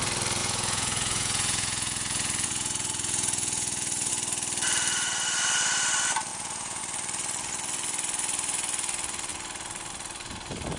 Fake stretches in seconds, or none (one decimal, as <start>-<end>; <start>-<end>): 0.4-4.1; 6.3-6.8